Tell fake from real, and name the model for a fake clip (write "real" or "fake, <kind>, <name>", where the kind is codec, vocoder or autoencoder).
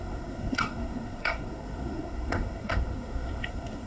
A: fake, codec, SNAC